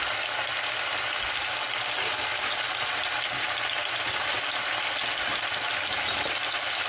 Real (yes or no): yes